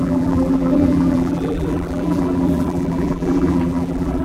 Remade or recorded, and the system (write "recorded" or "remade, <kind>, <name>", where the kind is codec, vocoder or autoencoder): remade, vocoder, BigVGAN v2